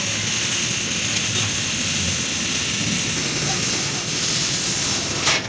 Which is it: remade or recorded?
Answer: recorded